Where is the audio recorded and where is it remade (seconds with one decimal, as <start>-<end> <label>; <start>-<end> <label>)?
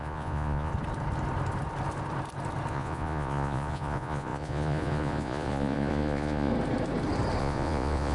0.0-0.7 remade; 0.7-2.7 recorded; 2.7-6.5 remade; 6.5-7.4 recorded; 7.4-8.1 remade